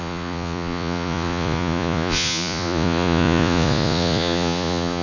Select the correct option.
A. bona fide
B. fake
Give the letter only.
B